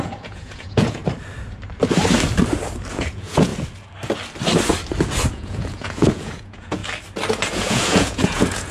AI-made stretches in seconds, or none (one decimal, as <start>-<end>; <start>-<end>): 0.0-1.0; 2.9-3.5; 5.3-6.8; 7.5-8.7